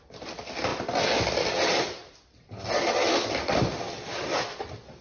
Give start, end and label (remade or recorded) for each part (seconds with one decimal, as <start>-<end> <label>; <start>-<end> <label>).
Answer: 0.0-5.0 remade